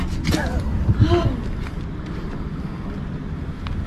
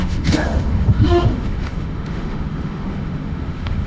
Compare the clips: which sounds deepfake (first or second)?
second